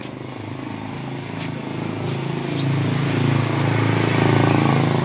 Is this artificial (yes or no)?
no